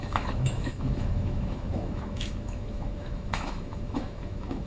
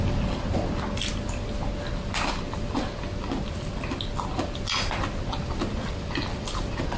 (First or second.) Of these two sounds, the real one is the second